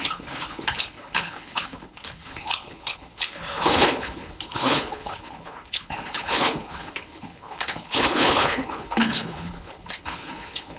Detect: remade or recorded remade